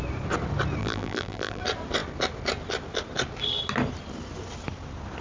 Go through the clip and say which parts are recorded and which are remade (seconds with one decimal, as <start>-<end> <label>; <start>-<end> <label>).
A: 0.0-0.8 recorded; 0.8-1.6 remade; 1.6-5.2 recorded